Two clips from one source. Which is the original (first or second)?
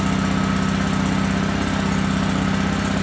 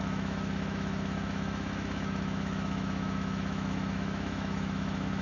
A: first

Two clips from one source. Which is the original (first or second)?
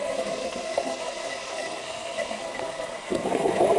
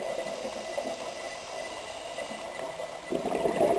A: second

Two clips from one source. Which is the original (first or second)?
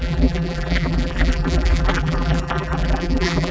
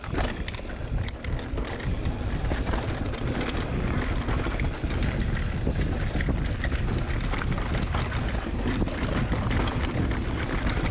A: second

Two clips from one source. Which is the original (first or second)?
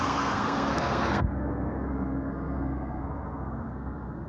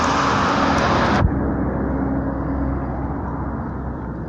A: second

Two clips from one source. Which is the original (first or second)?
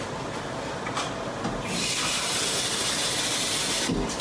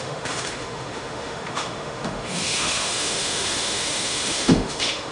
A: first